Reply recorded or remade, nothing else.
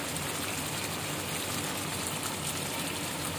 recorded